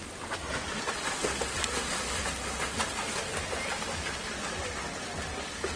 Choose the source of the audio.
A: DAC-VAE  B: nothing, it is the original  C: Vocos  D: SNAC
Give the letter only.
B